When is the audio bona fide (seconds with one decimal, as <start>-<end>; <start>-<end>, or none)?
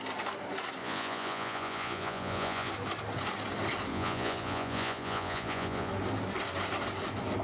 0.0-0.8; 2.7-3.9; 5.9-7.4